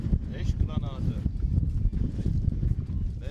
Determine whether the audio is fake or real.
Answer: fake